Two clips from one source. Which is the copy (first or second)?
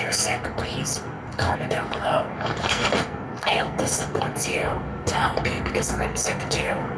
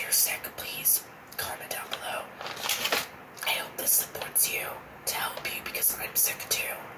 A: first